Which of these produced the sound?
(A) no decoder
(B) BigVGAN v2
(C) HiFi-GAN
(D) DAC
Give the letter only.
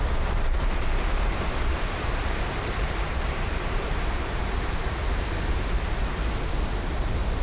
B